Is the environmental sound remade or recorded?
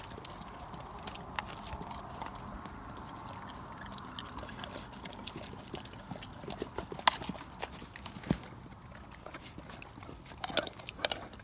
recorded